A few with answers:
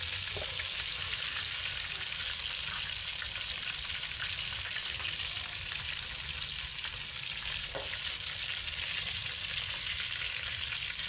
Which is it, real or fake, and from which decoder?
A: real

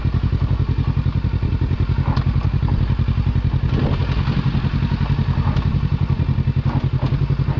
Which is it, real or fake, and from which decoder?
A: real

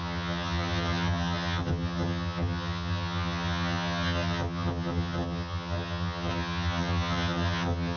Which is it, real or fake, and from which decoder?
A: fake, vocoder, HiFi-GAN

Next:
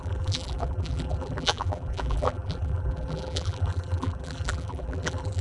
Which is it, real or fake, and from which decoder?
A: fake, vocoder, BigVGAN v2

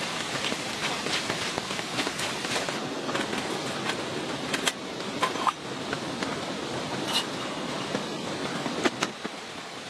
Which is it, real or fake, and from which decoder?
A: real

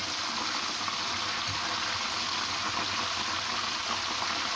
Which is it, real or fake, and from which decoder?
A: real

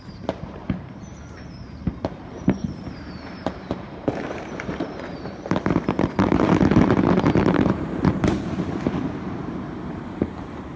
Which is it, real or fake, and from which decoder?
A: fake, vocoder, BigVGAN v2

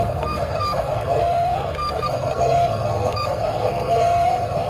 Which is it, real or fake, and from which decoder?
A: fake, codec, SNAC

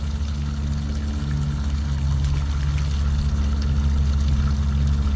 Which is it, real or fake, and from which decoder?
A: real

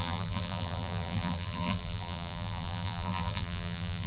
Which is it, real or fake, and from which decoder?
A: fake, vocoder, BigVGAN v2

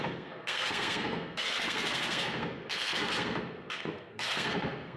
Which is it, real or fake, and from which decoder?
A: fake, codec, SNAC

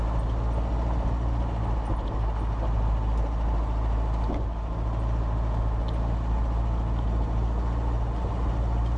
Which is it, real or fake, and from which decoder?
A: real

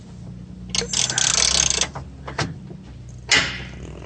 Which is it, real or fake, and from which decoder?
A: real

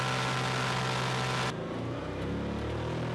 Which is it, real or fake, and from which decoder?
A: real